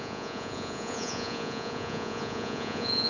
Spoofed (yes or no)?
yes